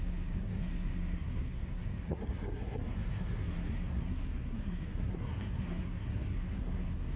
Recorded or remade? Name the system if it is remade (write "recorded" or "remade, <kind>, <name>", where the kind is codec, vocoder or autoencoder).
remade, codec, SNAC